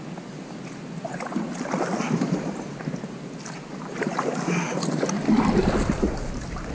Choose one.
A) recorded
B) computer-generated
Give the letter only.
A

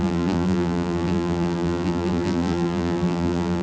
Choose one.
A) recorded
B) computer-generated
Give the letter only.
B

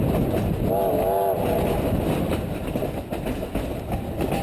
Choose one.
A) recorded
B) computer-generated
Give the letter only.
A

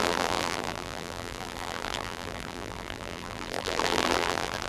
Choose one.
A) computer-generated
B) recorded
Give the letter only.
A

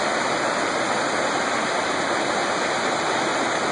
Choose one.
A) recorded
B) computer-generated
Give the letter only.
A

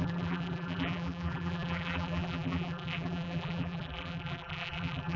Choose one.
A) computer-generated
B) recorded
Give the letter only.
A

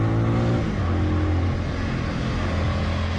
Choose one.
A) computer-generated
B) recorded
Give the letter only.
B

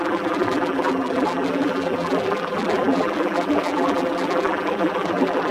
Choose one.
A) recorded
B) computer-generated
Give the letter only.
B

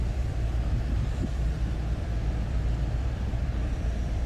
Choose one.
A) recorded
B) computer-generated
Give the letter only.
B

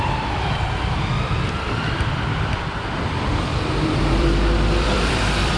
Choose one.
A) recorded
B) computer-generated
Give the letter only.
B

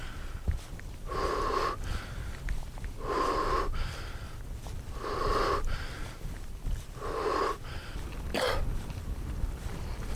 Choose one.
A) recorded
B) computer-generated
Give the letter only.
B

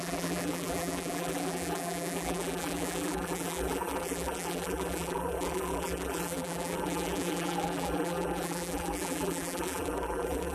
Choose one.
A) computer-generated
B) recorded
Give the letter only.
A